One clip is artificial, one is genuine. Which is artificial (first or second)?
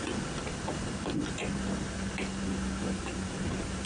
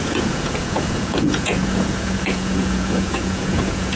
second